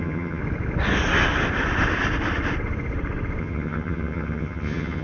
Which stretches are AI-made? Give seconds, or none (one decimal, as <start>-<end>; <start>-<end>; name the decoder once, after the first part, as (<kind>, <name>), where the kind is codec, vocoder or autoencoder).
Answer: 0.0-0.4 (vocoder, HiFi-GAN); 3.4-5.0